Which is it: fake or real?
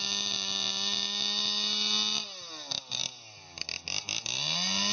real